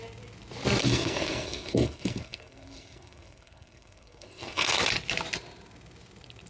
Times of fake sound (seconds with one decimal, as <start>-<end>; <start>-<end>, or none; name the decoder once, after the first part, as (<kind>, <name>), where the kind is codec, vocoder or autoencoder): 0.8-4.7 (codec, SNAC)